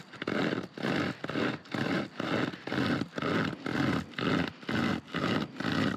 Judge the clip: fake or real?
real